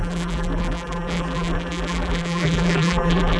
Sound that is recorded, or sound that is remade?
remade